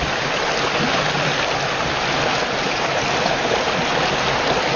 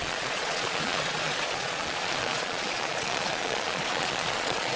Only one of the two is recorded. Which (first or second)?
first